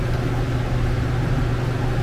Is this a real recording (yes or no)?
yes